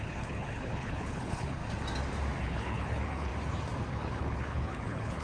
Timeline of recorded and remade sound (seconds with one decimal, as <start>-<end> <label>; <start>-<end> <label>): 0.0-1.6 remade; 1.6-2.4 recorded; 2.4-3.3 remade; 3.3-3.9 recorded; 3.9-5.2 remade